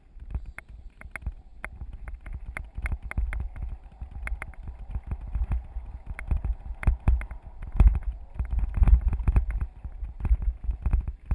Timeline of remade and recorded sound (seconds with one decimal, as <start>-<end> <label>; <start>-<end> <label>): 0.0-11.3 recorded